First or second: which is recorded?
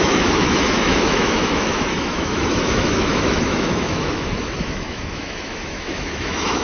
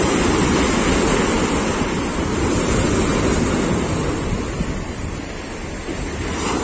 second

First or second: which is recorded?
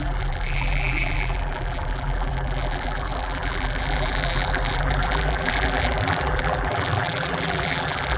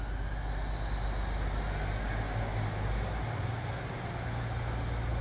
second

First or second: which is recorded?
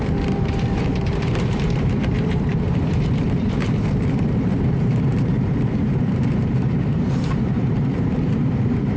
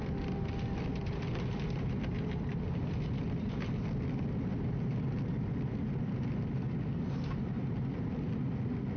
second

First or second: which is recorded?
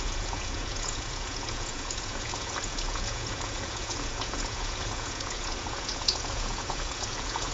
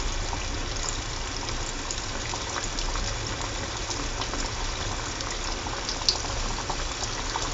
second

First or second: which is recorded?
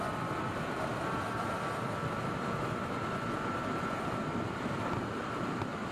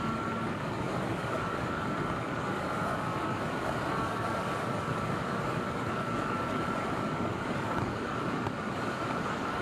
first